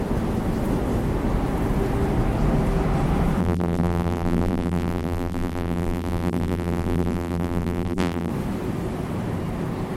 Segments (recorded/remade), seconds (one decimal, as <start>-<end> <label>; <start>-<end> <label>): 0.0-3.4 recorded; 3.4-8.3 remade; 8.3-10.0 recorded